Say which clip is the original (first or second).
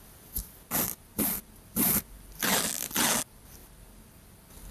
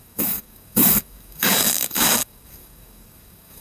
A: first